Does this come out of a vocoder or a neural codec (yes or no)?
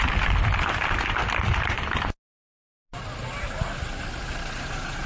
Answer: no